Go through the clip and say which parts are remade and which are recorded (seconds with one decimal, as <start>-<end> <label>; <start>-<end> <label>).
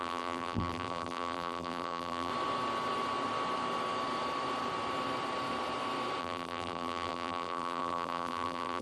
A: 0.0-2.3 remade; 2.3-6.2 recorded; 6.2-8.8 remade